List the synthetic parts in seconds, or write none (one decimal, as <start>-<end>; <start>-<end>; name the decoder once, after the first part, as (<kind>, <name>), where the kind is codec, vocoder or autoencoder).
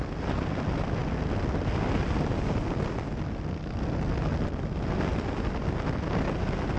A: none